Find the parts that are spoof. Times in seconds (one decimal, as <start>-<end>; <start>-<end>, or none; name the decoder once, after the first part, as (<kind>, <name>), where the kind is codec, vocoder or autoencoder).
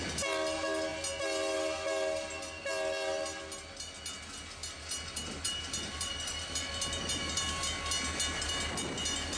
4.6-6.7 (vocoder, BigVGAN v2)